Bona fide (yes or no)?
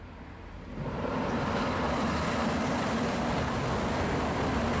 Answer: yes